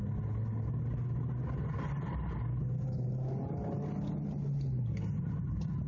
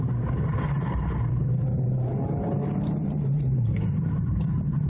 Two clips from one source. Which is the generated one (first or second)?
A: second